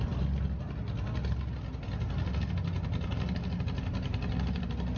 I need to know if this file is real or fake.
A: real